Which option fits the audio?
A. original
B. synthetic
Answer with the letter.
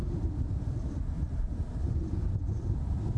A